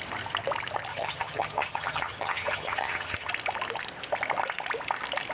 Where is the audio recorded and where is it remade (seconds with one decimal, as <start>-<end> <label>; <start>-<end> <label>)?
0.0-0.9 recorded; 0.9-3.3 remade; 3.3-5.3 recorded